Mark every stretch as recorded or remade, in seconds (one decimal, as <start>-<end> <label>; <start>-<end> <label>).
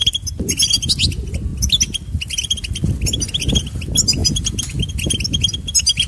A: 0.0-6.1 recorded